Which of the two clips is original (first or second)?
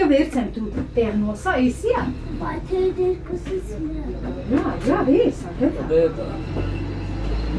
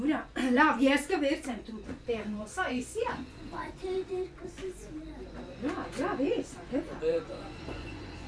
first